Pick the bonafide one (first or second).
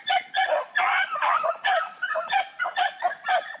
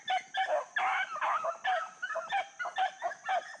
second